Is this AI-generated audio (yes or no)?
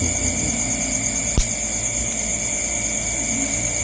no